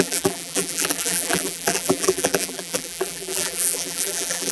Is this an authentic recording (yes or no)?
no